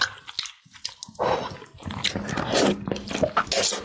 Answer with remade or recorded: recorded